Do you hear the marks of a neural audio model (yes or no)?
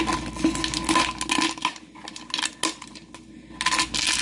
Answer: no